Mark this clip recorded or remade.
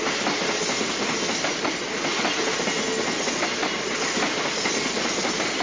recorded